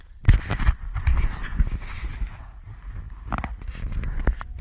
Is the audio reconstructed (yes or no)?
no